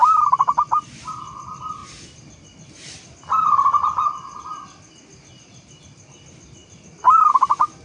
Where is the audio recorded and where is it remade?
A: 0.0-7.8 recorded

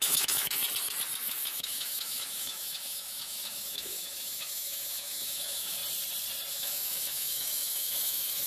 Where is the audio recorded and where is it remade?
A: 0.0-0.6 remade; 0.6-1.2 recorded; 1.2-5.8 remade; 5.8-6.5 recorded; 6.5-8.5 remade